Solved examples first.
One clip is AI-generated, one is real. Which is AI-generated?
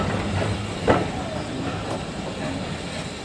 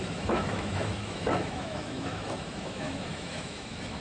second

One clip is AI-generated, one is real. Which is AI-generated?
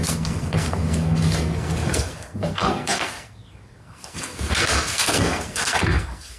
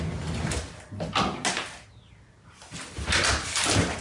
first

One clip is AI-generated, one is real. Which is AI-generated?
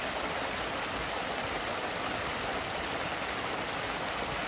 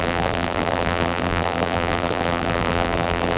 second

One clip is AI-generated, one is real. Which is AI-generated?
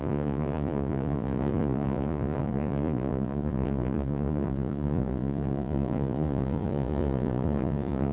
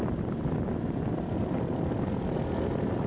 first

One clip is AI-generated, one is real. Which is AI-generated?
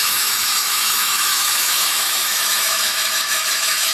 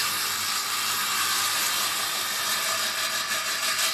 first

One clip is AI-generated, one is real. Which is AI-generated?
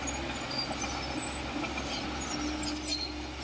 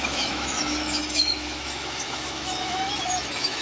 second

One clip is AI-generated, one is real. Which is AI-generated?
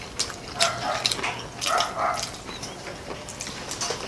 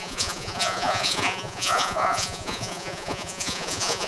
second